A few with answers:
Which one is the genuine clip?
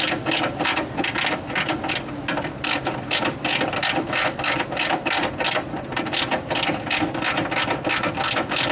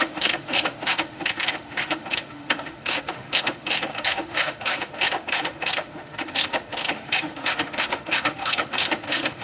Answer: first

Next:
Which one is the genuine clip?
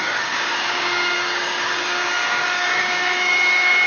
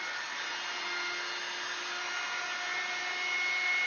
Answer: second